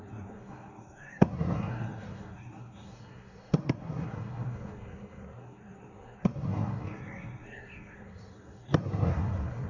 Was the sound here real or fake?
fake